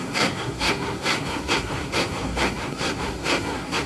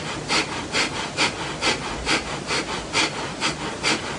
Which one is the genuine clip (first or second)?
second